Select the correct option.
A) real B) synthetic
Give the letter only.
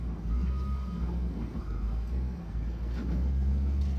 B